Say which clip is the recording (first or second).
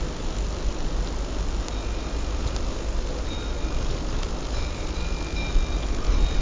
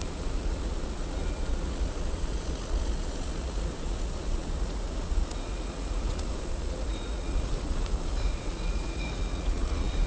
first